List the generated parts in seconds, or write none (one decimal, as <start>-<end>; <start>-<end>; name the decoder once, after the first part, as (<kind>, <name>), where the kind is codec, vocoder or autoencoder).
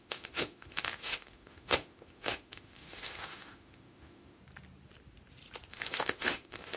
0.0-4.4 (autoencoder, DAC-VAE); 5.7-6.8